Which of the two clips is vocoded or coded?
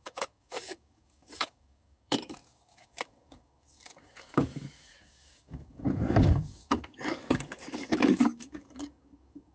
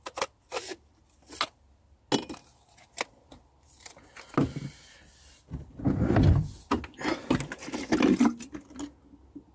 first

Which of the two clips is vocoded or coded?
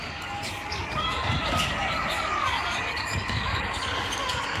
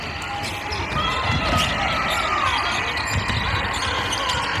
first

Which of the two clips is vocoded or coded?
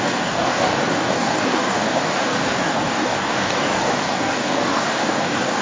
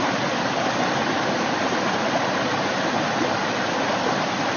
first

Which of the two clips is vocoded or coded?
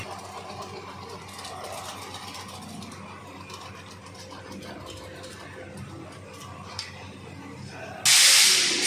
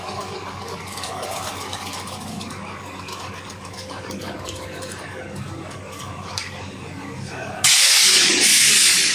second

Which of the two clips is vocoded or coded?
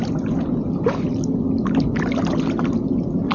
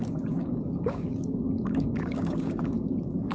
second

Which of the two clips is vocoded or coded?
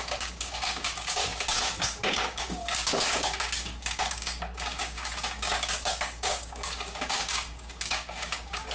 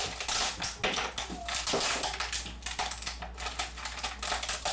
first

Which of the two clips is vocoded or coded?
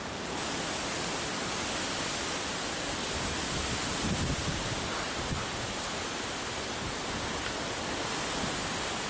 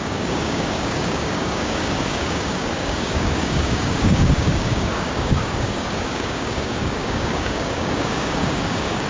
second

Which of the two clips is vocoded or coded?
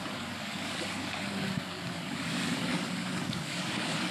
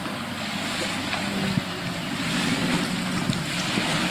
first